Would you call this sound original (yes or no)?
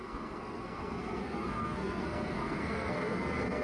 no